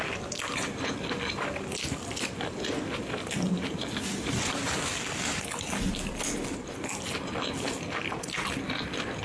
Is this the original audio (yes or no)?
yes